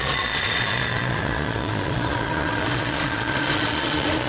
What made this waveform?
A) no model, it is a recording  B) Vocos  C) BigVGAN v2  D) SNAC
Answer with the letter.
B